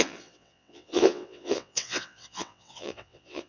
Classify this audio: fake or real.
fake